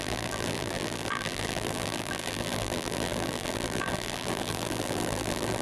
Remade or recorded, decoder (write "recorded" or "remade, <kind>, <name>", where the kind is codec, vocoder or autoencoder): remade, vocoder, BigVGAN v2